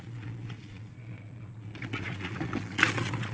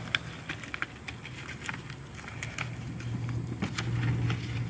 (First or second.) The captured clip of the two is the second